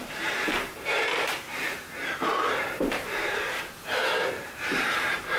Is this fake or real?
fake